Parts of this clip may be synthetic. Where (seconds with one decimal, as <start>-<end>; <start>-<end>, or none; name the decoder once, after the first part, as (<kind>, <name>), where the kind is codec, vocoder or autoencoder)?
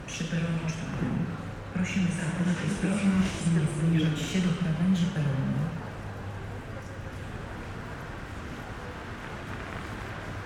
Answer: 2.2-3.4 (autoencoder, DAC-VAE)